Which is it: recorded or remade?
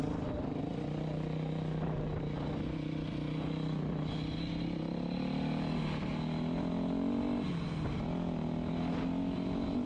recorded